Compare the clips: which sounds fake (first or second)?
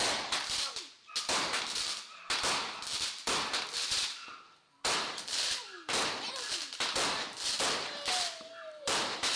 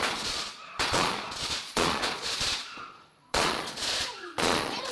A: second